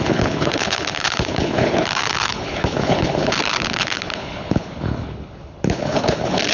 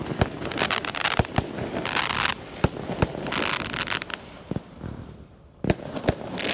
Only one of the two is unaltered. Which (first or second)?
second